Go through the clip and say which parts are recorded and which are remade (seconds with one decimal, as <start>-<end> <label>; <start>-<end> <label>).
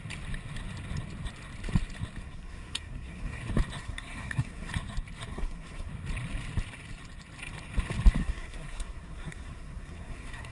0.0-2.2 recorded; 2.2-3.4 remade; 3.4-3.8 recorded; 3.8-4.7 remade; 4.7-5.3 recorded; 5.3-5.9 remade; 5.9-8.2 recorded; 8.2-10.5 remade